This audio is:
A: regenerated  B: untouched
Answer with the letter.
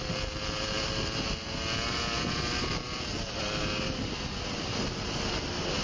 B